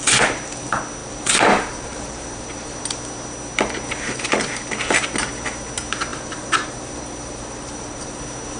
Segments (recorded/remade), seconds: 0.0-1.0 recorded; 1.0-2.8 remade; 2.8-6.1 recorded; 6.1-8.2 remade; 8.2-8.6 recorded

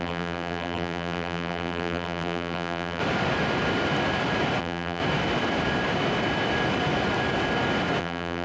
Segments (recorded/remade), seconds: 0.0-3.0 remade; 3.0-4.6 recorded; 4.6-5.0 remade; 5.0-8.0 recorded; 8.0-8.4 remade

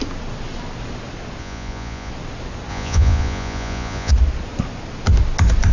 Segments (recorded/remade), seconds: 0.0-1.4 recorded; 1.4-2.1 remade; 2.1-2.7 recorded; 2.7-4.1 remade; 4.1-5.7 recorded

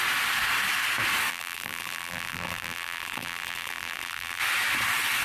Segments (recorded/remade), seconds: 0.0-1.3 recorded; 1.3-4.4 remade; 4.4-5.2 recorded